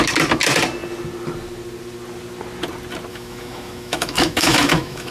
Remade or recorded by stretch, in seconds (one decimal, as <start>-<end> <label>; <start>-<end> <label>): 0.0-3.1 recorded; 3.1-5.1 remade